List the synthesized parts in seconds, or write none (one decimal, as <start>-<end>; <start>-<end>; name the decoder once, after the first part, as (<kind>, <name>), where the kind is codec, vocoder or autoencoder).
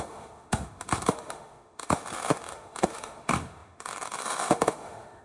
0.0-5.2 (autoencoder, DAC-VAE)